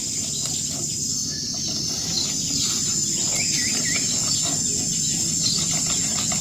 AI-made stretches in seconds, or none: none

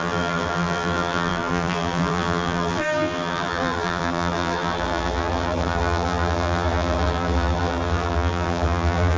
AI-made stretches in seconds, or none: 0.0-9.2 (vocoder, BigVGAN v2)